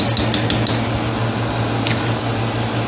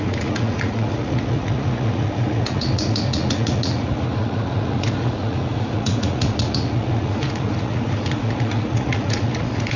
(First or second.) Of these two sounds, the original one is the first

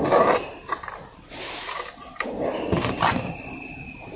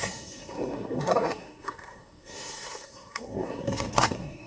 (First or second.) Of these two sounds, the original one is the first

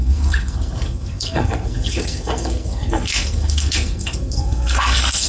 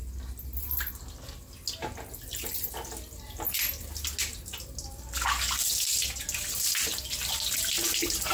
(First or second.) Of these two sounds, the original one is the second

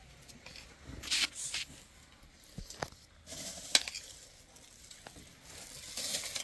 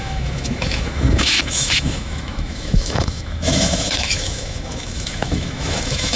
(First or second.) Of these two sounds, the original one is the first